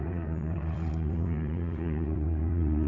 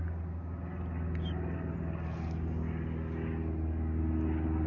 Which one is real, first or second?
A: second